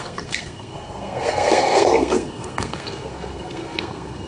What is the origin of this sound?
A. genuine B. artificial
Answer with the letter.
B